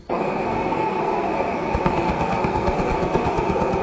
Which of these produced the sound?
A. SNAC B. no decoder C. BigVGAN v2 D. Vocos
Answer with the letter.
A